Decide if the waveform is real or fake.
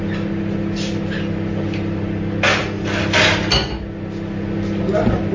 real